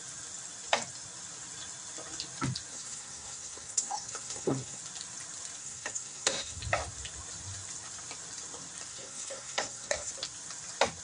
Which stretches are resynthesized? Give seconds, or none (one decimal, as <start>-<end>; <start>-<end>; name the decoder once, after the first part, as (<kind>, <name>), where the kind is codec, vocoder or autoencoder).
2.7-4.8 (codec, SNAC); 5.6-6.6; 8.9-10.1